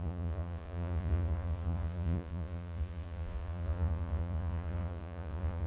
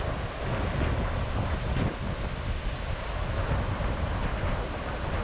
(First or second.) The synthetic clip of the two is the first